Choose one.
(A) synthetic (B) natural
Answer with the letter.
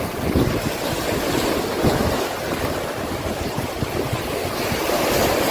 B